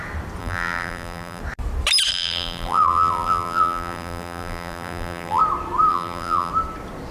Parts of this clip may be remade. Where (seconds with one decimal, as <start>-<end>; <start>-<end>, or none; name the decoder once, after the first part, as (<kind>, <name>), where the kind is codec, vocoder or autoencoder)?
0.4-1.4 (vocoder, BigVGAN v2); 2.1-5.4; 5.9-6.5